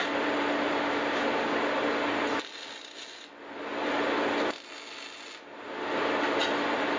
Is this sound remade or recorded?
recorded